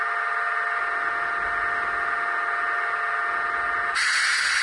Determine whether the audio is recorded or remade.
recorded